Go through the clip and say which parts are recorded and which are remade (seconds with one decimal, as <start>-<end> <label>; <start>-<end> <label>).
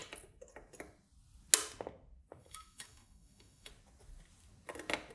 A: 0.0-2.4 recorded; 2.4-3.7 remade; 3.7-5.1 recorded